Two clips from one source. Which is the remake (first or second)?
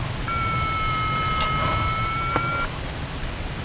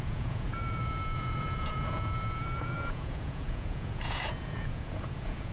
second